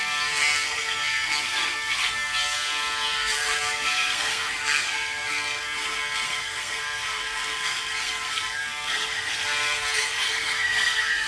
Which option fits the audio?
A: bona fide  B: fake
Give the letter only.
B